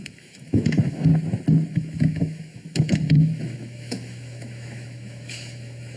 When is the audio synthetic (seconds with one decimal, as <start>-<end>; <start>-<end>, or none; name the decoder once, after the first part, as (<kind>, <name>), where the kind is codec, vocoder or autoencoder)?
0.0-1.1 (autoencoder, DAC-VAE); 1.7-6.0